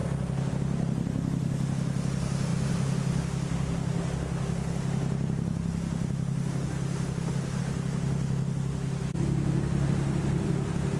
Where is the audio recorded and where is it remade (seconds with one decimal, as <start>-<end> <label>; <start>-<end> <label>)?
0.0-11.0 recorded